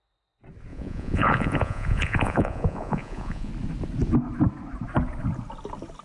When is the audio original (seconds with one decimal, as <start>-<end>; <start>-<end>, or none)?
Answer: 0.0-0.7; 3.5-6.0